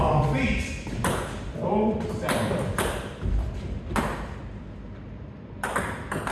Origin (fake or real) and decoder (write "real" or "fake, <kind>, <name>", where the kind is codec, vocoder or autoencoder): real